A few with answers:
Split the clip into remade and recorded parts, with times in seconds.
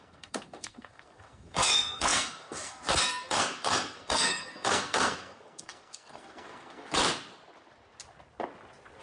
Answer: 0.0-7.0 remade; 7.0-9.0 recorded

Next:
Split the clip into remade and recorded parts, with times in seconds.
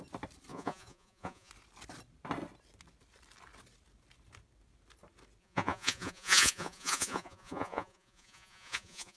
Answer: 0.0-0.5 recorded; 0.5-1.5 remade; 1.5-5.4 recorded; 5.4-9.2 remade